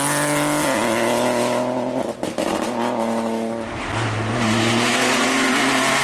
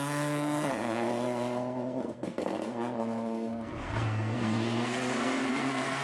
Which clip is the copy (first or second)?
second